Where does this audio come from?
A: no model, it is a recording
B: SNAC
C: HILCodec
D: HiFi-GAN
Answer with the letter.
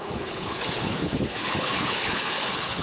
C